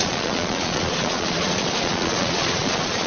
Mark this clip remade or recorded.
remade